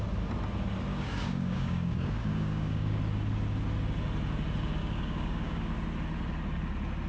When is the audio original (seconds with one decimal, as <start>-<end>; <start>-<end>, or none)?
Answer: 0.0-0.9; 3.0-4.8; 5.7-7.1